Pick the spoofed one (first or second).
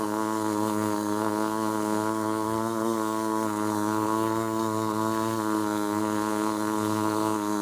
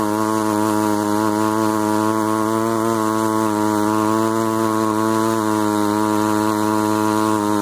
first